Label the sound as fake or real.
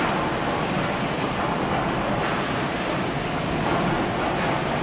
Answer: real